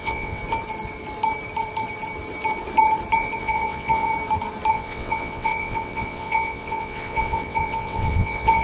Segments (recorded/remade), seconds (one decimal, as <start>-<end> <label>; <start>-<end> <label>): 0.0-0.4 remade; 0.4-3.4 recorded; 3.4-4.1 remade; 4.1-4.7 recorded; 4.7-8.6 remade